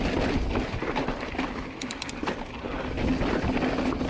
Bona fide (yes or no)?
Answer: yes